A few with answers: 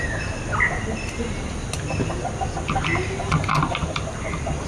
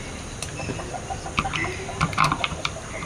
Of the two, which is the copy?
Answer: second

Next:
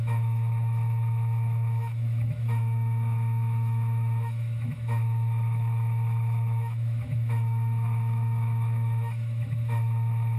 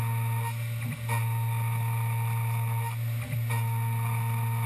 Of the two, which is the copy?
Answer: first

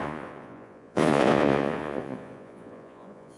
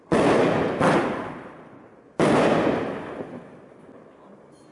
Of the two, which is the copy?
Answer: first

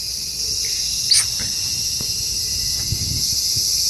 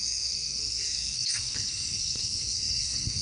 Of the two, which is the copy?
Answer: second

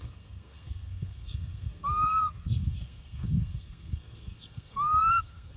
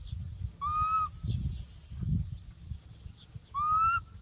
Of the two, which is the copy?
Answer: first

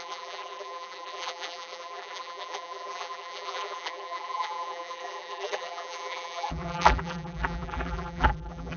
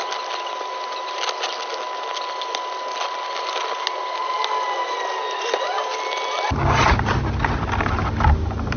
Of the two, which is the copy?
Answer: first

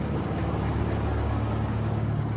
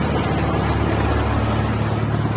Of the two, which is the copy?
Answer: first